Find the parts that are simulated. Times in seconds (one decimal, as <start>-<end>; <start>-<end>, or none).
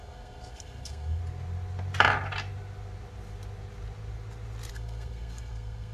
0.0-1.2; 4.7-5.9